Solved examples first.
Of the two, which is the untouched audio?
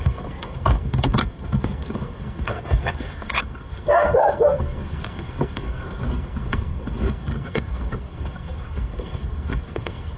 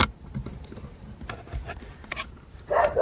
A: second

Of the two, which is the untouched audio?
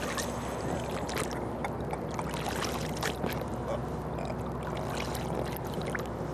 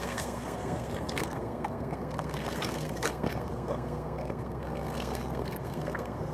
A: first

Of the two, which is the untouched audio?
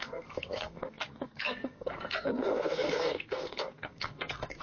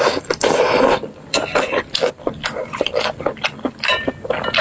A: second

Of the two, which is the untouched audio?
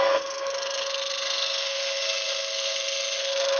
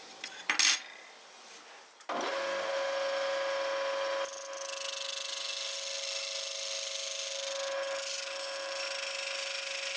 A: second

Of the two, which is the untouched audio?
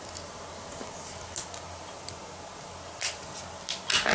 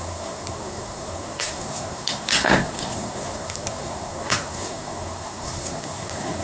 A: first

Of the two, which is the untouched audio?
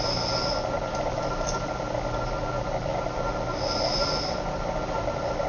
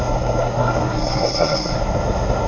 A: first